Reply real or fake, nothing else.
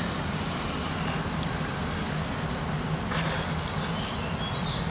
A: real